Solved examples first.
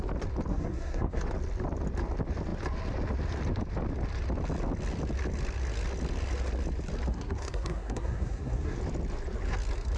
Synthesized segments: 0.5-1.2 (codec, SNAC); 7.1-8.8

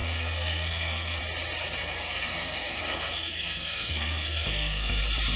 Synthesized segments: 0.0-1.2 (codec, SNAC); 1.8-5.0

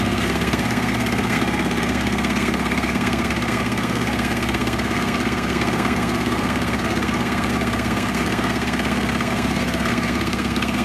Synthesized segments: 0.0-10.8 (codec, SNAC)

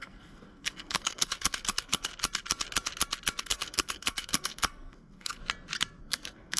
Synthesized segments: 0.0-2.1 (codec, SNAC); 3.4-5.4; 6.0-6.6

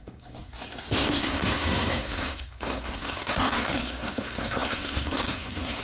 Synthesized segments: 0.0-5.8 (codec, SNAC)

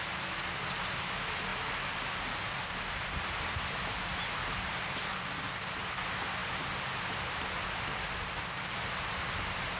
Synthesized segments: none

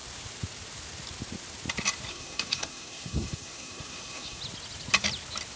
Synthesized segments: 2.1-4.4 (codec, SNAC)

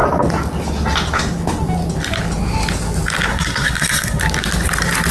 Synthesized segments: 3.3-4.2 (codec, SNAC)